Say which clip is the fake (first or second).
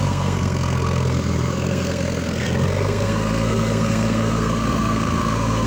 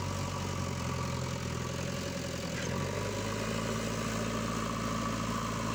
first